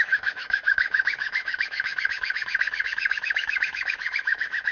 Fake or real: fake